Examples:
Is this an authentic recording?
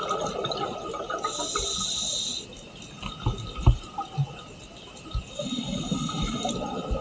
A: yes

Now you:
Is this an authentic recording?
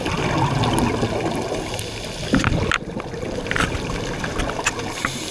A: yes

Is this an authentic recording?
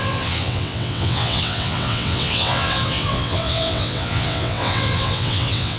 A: no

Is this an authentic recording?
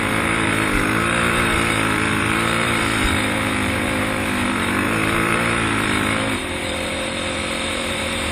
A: no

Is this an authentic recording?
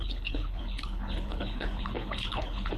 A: no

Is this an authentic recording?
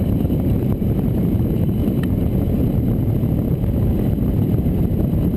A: no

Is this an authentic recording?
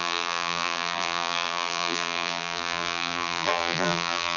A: no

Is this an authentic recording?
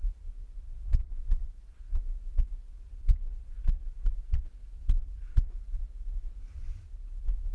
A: no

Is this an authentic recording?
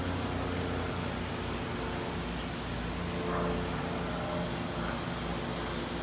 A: yes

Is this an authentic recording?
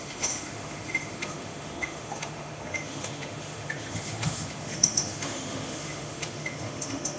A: no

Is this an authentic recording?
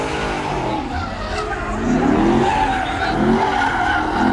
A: yes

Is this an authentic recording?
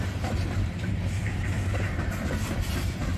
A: no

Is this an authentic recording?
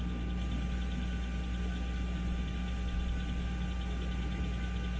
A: yes